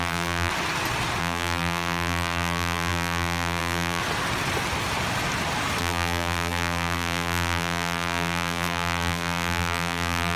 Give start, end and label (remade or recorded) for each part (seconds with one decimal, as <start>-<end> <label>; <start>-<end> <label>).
0.0-0.5 remade; 0.5-1.2 recorded; 1.2-4.0 remade; 4.0-5.8 recorded; 5.8-10.4 remade